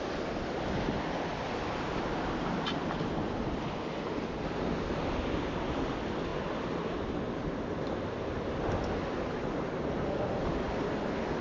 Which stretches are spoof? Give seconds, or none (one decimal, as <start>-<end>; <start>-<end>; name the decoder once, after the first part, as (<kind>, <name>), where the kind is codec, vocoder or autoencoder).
none